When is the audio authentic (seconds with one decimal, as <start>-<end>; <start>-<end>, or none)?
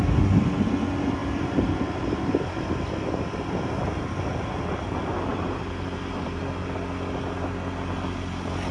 0.0-1.2; 2.2-5.3; 6.4-8.7